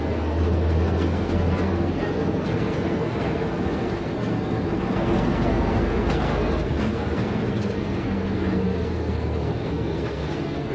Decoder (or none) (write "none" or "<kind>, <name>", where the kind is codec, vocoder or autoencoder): codec, SNAC